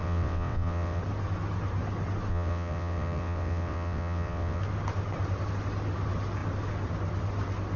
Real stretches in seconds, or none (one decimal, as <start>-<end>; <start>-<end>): 1.0-2.3; 4.6-7.8